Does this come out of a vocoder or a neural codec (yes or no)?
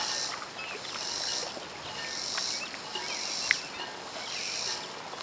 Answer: no